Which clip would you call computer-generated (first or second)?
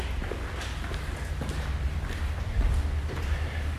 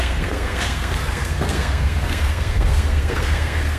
second